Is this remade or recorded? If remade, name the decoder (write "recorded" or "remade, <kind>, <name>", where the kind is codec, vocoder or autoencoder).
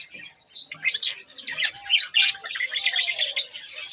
recorded